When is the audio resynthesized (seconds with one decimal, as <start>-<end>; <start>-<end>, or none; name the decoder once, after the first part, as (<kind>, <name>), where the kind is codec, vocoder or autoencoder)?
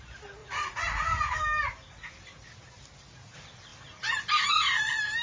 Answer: 0.4-1.3 (vocoder, Vocos)